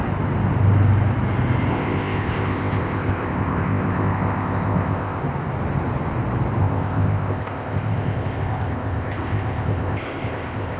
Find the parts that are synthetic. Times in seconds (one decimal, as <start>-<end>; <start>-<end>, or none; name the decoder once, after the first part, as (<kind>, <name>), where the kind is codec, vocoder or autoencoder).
1.7-5.2 (codec, ZipCodec); 6.6-10.8